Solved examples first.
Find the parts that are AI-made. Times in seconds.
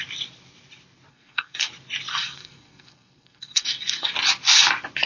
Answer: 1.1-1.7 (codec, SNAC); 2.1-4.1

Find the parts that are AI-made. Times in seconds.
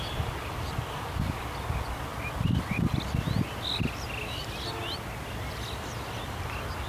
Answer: none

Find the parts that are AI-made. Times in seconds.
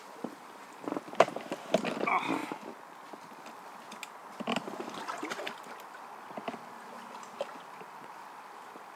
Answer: none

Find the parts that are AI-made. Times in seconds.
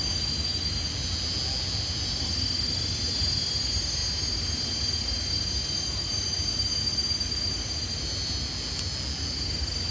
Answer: none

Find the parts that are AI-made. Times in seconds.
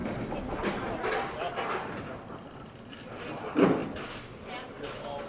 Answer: none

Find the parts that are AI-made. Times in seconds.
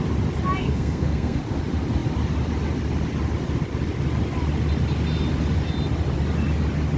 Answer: 0.6-1.4 (codec, SNAC)